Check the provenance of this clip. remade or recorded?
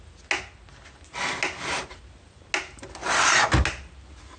recorded